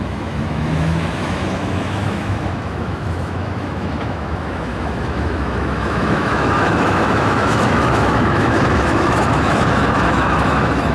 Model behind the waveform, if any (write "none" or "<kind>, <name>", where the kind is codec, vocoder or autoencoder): autoencoder, DAC-VAE